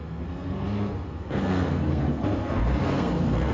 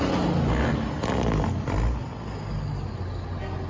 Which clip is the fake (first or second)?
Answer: first